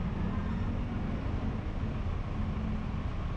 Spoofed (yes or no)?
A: no